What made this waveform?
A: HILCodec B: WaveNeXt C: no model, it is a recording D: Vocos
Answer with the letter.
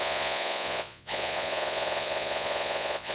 D